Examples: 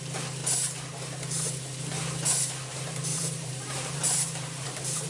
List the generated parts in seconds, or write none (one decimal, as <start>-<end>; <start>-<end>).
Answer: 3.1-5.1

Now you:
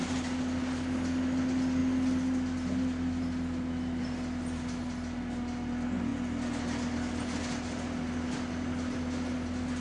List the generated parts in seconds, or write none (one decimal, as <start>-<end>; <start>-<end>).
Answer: none

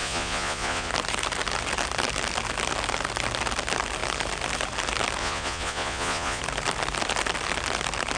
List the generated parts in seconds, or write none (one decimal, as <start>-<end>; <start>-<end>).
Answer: 0.0-0.9; 5.2-6.4

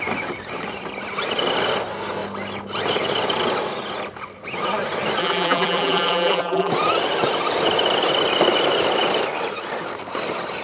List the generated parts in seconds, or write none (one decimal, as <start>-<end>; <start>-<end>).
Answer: 5.2-6.7

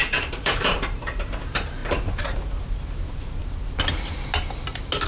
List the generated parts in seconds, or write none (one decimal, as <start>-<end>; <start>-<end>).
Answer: 0.0-3.4

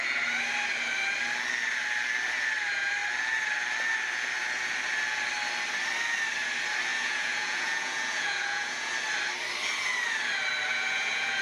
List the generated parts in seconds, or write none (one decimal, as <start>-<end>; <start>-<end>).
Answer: 6.9-8.9; 10.7-11.4